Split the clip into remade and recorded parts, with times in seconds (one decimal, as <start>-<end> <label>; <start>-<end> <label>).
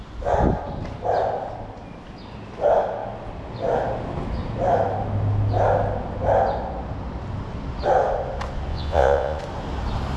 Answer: 0.0-8.7 recorded; 8.7-9.4 remade; 9.4-10.2 recorded